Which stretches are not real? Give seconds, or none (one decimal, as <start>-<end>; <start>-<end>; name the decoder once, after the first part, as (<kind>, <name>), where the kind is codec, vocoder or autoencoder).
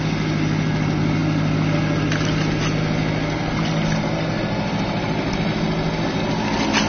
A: none